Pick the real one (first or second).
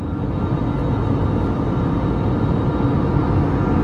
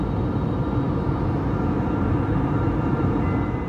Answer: first